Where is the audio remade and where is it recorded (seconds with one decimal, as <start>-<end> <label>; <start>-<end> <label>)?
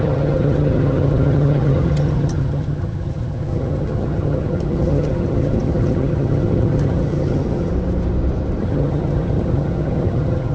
0.0-7.7 remade; 7.7-8.6 recorded; 8.6-10.5 remade